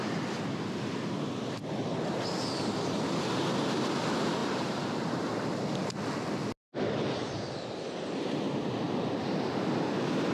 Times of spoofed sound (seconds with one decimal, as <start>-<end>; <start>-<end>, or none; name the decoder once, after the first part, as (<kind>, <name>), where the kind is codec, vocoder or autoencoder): 4.4-5.3 (vocoder, BigVGAN v2)